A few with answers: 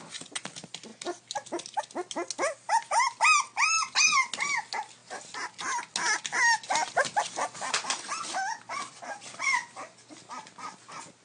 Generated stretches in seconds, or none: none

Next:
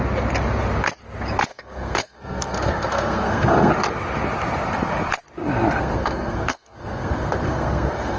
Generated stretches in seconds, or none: 1.5-3.7 (codec, SNAC); 5.8-8.2

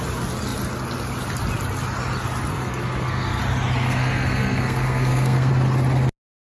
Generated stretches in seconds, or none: 2.5-3.4 (codec, SNAC); 3.8-5.5